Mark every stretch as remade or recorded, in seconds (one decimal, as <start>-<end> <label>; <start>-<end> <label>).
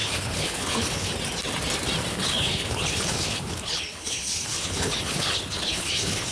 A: 0.0-1.1 remade; 1.1-2.1 recorded; 2.1-6.3 remade